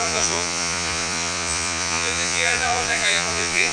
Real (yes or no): no